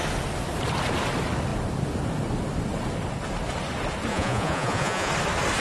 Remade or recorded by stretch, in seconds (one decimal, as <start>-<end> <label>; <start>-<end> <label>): 0.0-4.1 recorded; 4.1-5.1 remade; 5.1-5.6 recorded